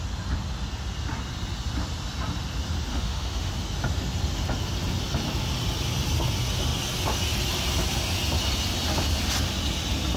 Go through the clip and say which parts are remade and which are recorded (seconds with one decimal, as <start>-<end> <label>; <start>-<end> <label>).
0.0-2.9 recorded; 2.9-3.5 remade; 3.5-10.2 recorded